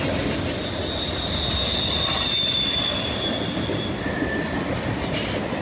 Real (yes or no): yes